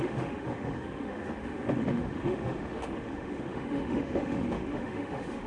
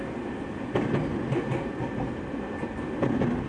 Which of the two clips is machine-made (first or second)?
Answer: first